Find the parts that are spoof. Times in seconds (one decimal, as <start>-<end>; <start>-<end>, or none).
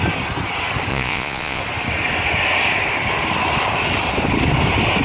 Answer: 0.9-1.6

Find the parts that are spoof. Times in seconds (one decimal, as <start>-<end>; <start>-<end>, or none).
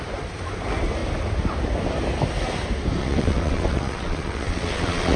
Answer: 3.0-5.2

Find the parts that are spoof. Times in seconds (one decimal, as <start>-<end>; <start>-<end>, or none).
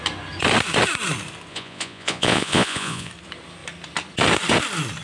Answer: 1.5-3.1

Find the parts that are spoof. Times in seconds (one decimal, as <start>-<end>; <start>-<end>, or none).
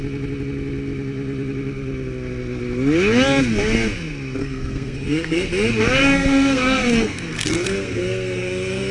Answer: 4.4-5.5; 6.0-8.9